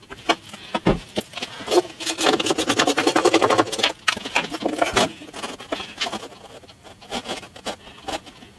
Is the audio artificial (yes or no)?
no